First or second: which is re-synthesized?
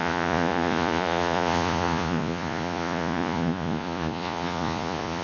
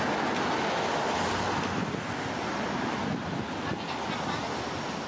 first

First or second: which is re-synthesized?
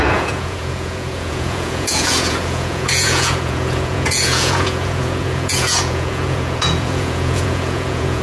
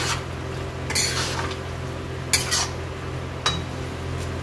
first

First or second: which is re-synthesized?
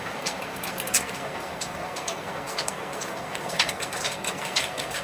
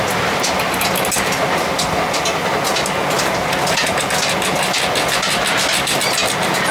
first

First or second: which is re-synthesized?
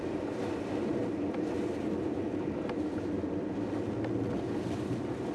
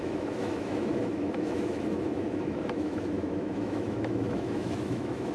second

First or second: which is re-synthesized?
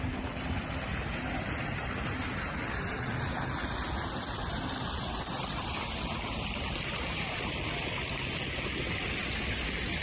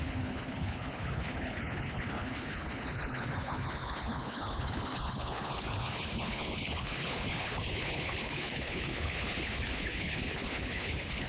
second